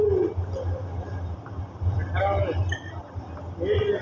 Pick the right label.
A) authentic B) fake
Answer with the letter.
A